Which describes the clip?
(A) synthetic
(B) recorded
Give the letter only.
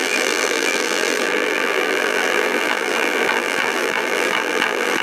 A